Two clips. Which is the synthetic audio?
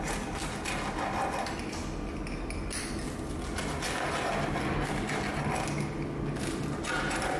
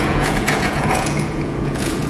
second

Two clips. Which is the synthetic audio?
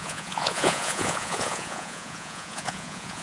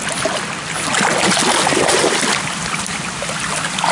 first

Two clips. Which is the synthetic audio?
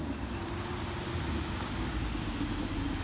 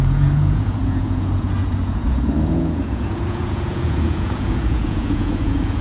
second